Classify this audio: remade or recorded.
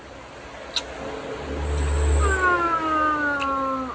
recorded